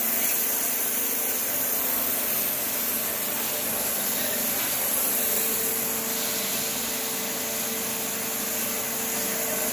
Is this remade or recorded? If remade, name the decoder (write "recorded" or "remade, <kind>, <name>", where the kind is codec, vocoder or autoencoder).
recorded